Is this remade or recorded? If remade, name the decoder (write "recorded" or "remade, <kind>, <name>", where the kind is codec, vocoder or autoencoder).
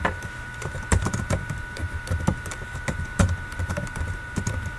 remade, vocoder, BigVGAN v2